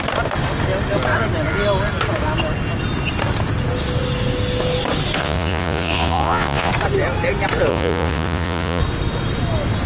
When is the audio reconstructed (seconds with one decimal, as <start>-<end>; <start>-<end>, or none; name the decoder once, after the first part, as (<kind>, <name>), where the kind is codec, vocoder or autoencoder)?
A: 5.2-6.7 (vocoder, Vocos); 7.7-8.8